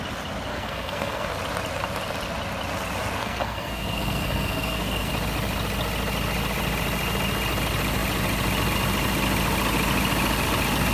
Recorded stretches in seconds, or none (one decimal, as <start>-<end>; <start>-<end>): 0.0-0.5; 1.3-3.2; 5.1-10.9